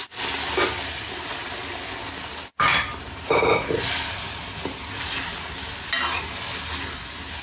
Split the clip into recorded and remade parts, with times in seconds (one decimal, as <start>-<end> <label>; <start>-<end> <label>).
0.0-7.4 recorded